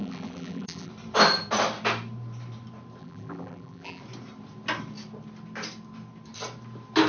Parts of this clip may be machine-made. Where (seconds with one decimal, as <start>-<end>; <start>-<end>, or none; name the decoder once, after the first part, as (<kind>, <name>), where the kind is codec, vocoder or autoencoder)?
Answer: 0.0-0.9 (vocoder, BigVGAN v2); 3.0-4.0